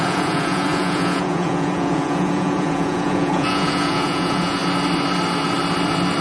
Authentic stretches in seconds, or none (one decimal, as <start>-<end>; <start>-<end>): 4.6-6.2